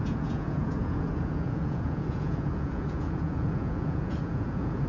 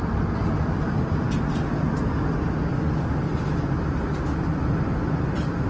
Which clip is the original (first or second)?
second